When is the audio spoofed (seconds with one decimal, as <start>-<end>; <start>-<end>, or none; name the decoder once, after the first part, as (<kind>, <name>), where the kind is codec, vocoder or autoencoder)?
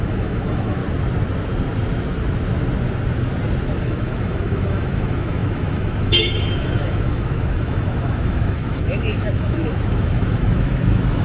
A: 0.0-0.8 (autoencoder, DAC-VAE); 3.8-11.2